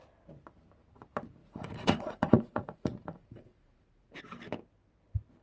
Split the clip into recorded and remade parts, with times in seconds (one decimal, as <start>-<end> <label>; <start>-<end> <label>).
0.0-1.4 recorded; 1.4-4.2 remade; 4.2-5.4 recorded